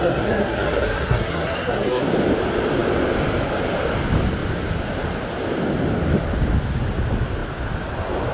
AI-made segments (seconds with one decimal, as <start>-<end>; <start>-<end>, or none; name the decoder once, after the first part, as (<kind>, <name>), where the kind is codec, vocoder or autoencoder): 0.0-2.0 (codec, SNAC)